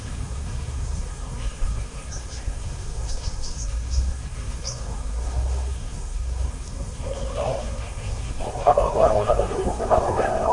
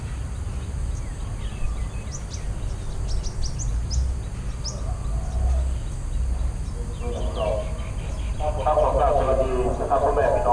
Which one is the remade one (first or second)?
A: first